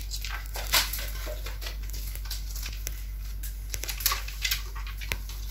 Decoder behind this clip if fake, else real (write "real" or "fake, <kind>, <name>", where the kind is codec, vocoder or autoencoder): real